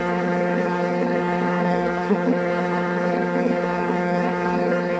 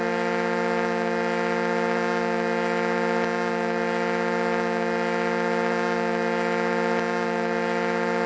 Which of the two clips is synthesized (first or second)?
first